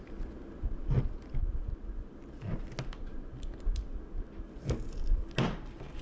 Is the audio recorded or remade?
recorded